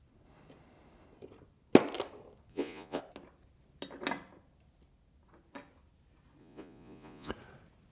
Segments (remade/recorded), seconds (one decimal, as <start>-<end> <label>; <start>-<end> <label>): 0.0-2.5 recorded; 2.5-3.0 remade; 3.0-6.4 recorded; 6.4-7.3 remade; 7.3-7.9 recorded